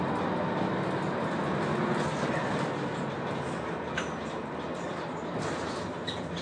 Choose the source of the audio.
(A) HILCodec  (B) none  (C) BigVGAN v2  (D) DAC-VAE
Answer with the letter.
B